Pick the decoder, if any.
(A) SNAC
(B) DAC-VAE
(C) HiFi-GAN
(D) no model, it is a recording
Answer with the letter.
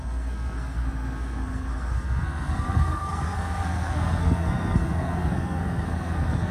A